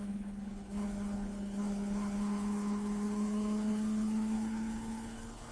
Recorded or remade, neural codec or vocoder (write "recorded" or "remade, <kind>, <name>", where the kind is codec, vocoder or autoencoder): remade, codec, HILCodec